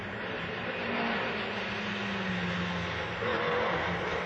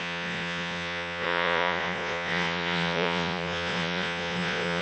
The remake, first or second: second